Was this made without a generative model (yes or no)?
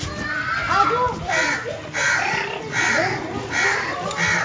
yes